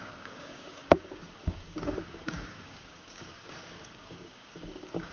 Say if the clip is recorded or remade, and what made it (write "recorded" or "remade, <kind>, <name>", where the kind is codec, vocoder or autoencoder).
remade, codec, DAC